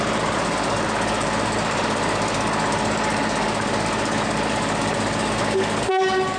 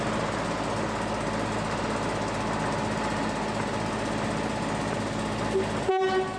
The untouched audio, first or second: second